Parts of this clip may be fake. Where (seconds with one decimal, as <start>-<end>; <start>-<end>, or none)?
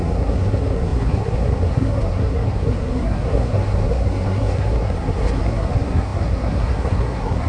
0.0-7.5